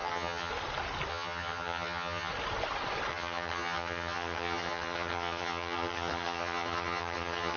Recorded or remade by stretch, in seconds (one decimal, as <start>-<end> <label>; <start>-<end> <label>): 0.0-0.5 remade; 0.5-1.1 recorded; 1.1-2.3 remade; 2.3-3.1 recorded; 3.1-7.6 remade